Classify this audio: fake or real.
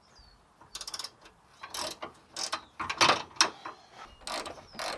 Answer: real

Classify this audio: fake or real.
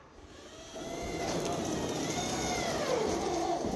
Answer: real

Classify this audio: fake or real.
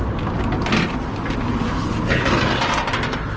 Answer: real